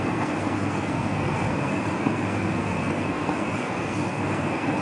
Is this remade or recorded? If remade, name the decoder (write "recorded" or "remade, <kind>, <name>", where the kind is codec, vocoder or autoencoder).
remade, codec, SNAC